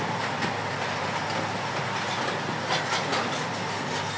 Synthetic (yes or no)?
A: no